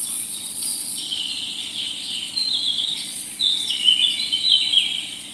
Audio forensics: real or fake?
fake